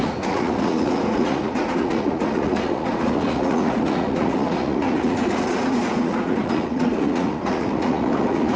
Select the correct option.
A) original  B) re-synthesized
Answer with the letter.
B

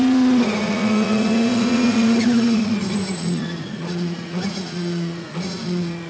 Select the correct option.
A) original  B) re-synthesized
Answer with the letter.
B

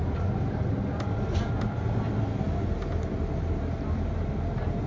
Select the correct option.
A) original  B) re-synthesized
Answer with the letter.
A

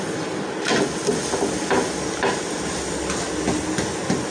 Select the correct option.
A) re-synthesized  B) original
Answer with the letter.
B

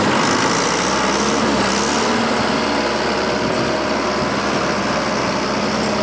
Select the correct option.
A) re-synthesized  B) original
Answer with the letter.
B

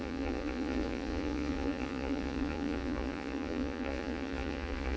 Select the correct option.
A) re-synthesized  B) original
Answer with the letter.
A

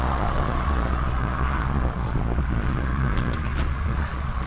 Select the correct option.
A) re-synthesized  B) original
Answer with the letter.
A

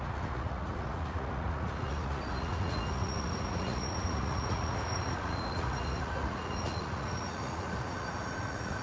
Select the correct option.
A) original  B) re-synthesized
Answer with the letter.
B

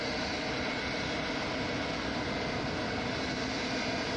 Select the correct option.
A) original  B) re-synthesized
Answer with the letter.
A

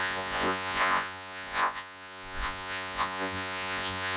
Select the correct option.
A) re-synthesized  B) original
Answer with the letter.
A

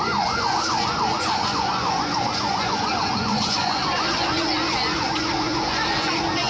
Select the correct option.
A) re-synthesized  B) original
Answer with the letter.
A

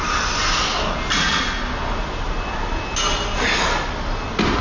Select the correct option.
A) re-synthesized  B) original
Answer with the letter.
B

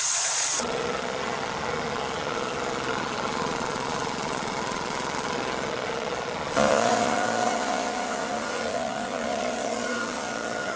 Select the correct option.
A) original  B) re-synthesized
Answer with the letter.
B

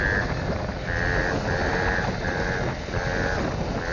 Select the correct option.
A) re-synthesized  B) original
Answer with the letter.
B